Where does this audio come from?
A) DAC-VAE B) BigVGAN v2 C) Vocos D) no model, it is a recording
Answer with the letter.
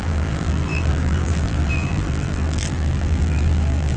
B